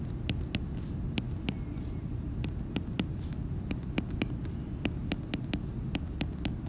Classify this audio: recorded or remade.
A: recorded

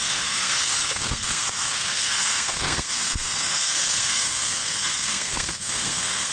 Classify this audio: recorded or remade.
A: remade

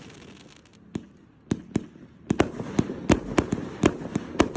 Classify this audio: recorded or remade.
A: recorded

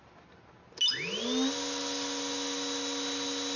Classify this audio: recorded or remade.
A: recorded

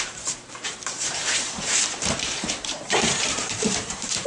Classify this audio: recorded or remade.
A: remade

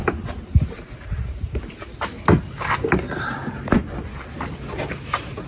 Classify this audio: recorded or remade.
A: recorded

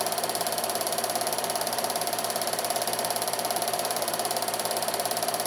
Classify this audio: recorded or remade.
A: remade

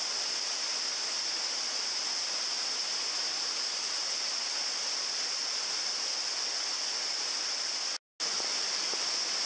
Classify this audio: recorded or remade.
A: recorded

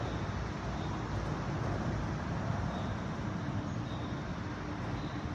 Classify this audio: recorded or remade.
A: recorded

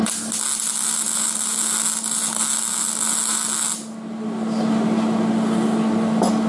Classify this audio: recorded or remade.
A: recorded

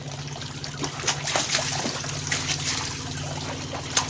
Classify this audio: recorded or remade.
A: recorded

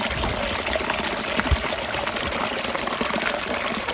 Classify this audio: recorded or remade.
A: recorded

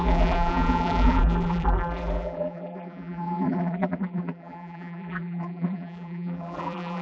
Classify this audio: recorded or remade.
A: remade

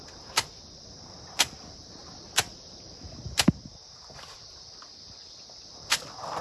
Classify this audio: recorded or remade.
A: remade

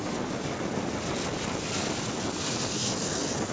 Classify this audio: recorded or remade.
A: recorded